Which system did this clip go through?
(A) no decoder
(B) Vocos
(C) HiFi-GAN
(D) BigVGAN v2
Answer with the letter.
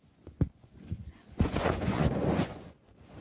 B